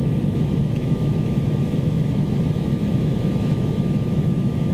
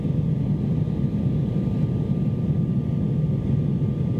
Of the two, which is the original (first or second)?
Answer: second